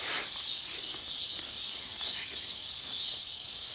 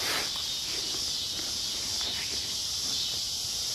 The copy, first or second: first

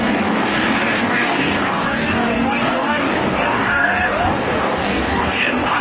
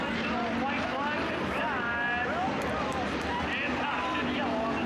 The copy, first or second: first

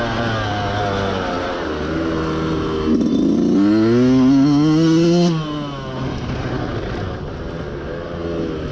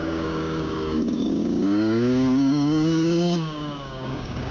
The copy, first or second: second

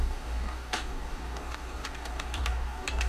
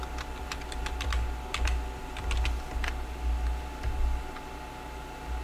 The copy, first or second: first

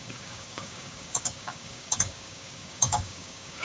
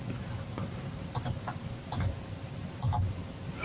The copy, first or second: first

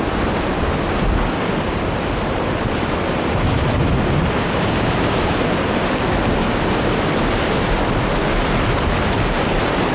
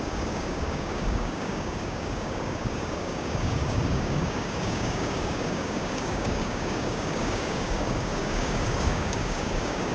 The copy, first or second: second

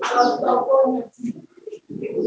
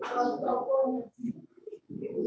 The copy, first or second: second